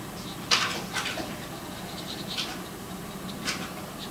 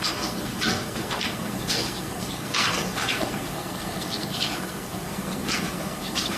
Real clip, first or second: first